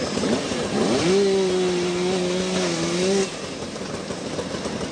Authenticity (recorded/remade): recorded